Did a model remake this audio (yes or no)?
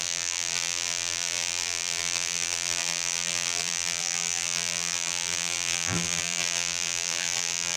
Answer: yes